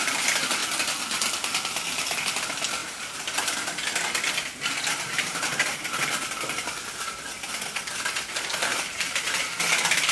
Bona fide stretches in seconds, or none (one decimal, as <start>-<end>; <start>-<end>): 0.0-4.9; 5.7-8.7; 9.5-10.1